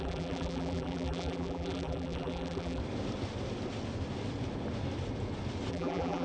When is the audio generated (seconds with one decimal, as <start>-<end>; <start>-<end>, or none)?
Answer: 0.0-2.8; 5.7-6.2